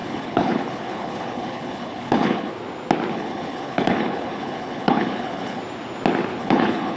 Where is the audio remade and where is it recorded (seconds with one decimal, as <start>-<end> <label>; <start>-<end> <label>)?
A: 0.0-2.5 remade; 2.5-3.1 recorded; 3.1-5.6 remade; 5.6-6.4 recorded; 6.4-7.0 remade